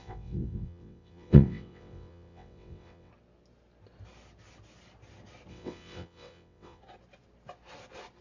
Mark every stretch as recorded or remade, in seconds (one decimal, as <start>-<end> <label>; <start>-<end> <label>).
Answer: 0.0-3.1 remade; 3.1-5.5 recorded; 5.5-6.8 remade; 6.8-8.2 recorded